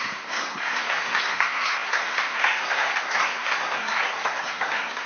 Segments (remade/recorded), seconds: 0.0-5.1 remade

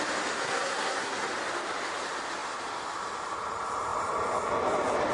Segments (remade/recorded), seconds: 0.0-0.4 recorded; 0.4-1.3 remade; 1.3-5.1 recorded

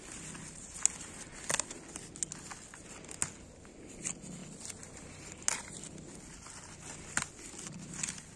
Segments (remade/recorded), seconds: 0.0-8.4 recorded

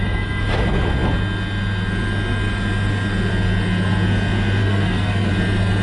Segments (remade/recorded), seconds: 0.0-4.6 recorded; 4.6-5.3 remade; 5.3-5.8 recorded

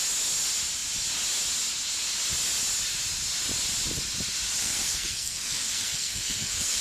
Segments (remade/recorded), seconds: 0.0-4.6 recorded; 4.6-6.8 remade

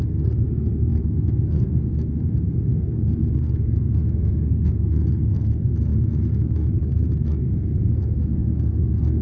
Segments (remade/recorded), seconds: 0.0-9.2 remade

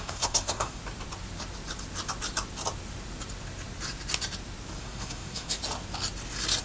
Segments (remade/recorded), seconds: 0.0-0.8 remade; 0.8-4.8 recorded; 4.8-5.6 remade; 5.6-6.6 recorded